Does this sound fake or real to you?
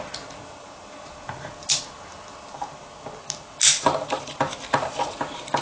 real